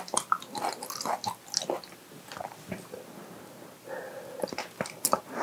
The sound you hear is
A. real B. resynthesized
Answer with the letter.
A